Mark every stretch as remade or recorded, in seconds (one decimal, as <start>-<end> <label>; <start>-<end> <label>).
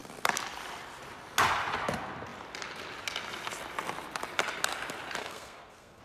0.0-5.2 recorded; 5.2-6.0 remade